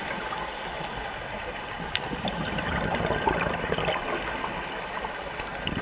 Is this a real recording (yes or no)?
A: yes